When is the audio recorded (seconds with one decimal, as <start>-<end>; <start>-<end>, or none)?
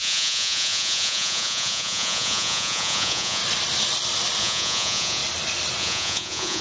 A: 3.4-4.4; 5.2-5.8